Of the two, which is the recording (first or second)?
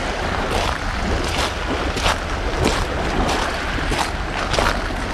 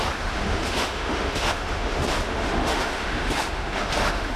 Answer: first